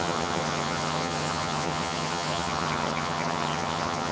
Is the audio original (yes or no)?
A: no